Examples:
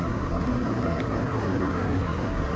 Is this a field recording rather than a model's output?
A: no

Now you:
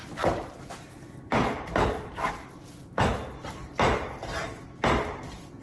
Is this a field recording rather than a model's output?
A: yes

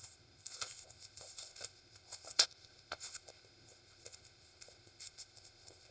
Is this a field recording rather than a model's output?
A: no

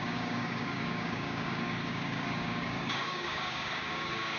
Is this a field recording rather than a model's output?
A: no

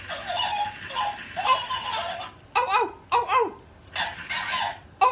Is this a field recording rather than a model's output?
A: yes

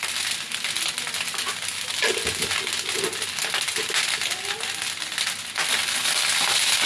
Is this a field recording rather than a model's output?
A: yes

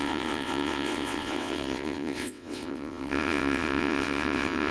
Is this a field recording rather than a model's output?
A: no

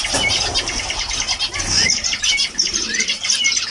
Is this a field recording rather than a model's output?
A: yes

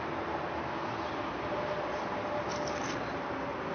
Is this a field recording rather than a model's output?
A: yes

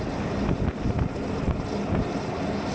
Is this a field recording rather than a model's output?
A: yes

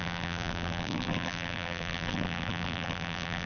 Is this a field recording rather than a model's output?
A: no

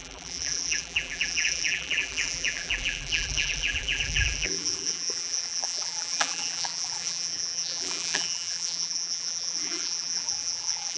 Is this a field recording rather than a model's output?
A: no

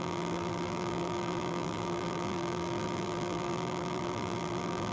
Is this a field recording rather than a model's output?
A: no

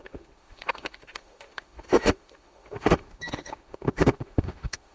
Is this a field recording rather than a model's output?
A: no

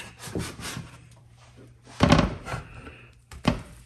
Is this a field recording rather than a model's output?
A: no